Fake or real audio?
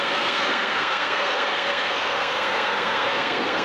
fake